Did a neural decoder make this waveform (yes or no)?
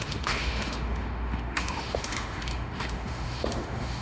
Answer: yes